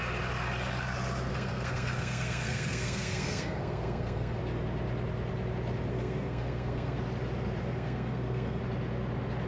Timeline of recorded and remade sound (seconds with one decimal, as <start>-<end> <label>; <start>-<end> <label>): 0.0-1.3 recorded; 1.3-4.4 remade; 4.4-5.9 recorded; 5.9-7.0 remade; 7.0-7.6 recorded; 7.6-8.6 remade; 8.6-9.5 recorded